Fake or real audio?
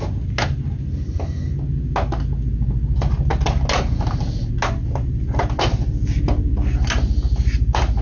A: real